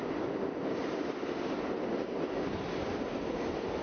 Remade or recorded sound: recorded